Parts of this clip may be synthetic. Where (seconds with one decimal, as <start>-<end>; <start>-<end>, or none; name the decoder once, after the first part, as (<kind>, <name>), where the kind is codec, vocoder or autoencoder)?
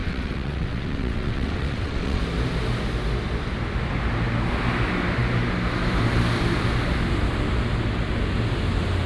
0.0-2.2 (vocoder, WaveNeXt)